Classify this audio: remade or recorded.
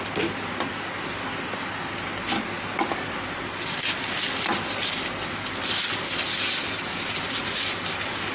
recorded